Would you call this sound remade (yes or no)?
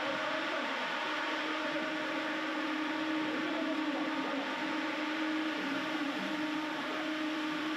yes